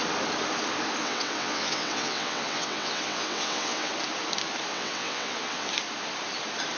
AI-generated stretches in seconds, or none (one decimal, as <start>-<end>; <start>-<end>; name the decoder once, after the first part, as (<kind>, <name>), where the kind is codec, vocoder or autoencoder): 1.0-3.9 (vocoder, WaveNeXt); 4.7-5.7